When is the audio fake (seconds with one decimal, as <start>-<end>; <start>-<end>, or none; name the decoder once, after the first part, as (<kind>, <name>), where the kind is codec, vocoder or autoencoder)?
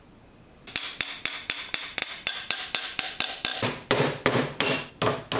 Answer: 2.0-3.0 (vocoder, BigVGAN v2); 3.5-4.9